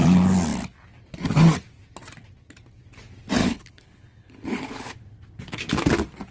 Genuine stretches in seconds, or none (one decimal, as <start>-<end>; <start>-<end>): 0.0-3.4; 5.0-6.3